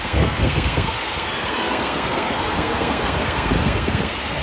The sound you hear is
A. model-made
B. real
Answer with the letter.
A